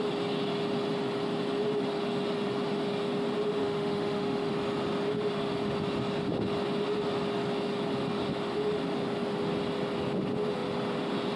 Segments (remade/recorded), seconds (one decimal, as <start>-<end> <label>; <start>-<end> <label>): 0.0-3.6 recorded; 3.6-4.5 remade; 4.5-11.4 recorded